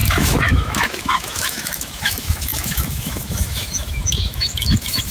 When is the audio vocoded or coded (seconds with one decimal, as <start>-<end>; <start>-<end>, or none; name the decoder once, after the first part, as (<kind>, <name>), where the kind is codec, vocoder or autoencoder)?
0.0-5.1 (autoencoder, DAC-VAE)